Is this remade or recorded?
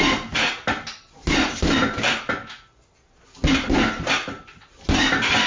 recorded